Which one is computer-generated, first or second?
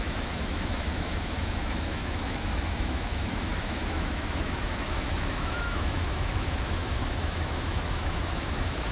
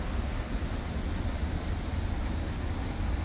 first